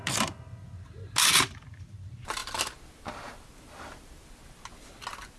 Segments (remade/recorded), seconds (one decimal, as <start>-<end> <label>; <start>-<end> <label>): 0.0-5.4 recorded